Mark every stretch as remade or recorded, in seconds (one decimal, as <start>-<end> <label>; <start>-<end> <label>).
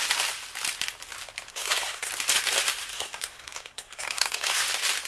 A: 0.0-1.5 recorded; 1.5-2.1 remade; 2.1-2.9 recorded; 2.9-4.6 remade; 4.6-5.1 recorded